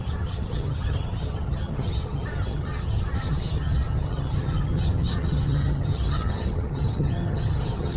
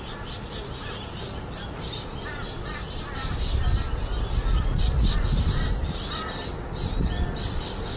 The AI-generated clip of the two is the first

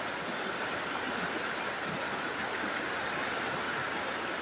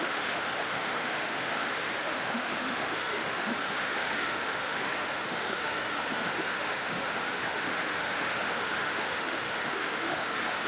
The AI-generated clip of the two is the second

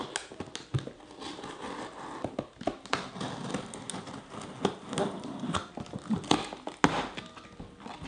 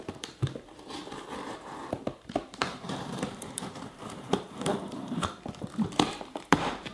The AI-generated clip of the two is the second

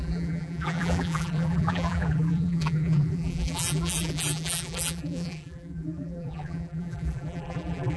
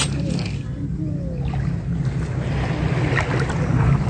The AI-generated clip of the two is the first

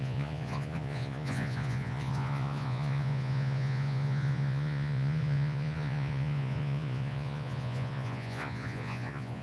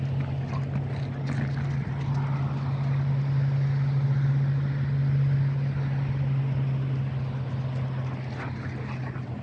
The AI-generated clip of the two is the first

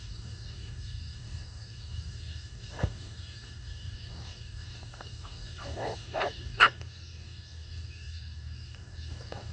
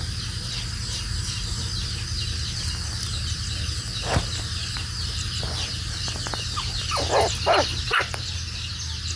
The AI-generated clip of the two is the first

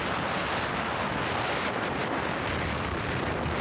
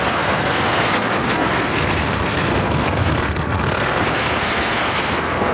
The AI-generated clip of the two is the second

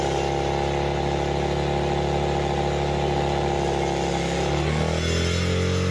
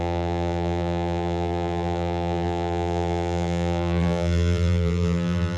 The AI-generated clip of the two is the second